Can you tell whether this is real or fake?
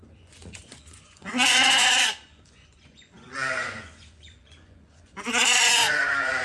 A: fake